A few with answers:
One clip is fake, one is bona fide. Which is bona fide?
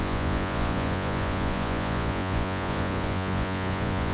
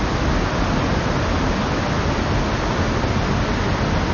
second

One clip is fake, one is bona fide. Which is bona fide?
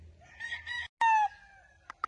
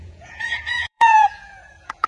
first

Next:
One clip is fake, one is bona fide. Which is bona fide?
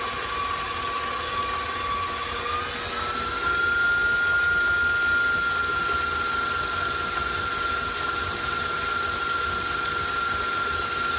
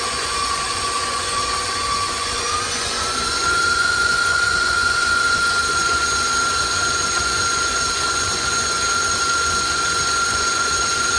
first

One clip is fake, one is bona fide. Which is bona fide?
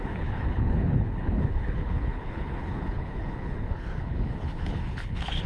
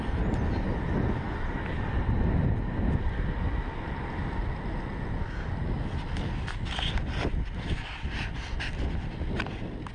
second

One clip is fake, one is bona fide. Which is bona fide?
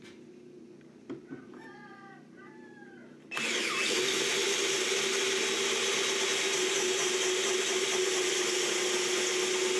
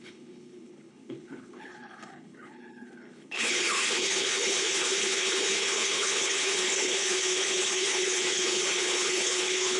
first